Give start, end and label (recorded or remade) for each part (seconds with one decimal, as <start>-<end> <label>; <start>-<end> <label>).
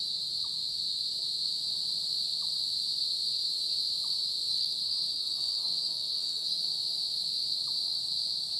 0.0-4.5 recorded; 4.5-6.6 remade; 6.6-8.6 recorded